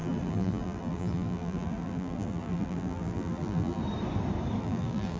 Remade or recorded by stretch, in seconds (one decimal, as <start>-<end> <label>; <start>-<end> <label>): 0.0-3.8 remade; 3.8-4.6 recorded; 4.6-5.2 remade